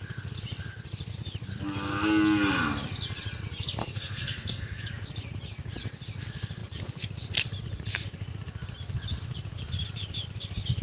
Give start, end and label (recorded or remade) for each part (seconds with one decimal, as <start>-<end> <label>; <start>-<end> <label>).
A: 0.0-3.8 recorded; 3.8-4.8 remade; 4.8-10.8 recorded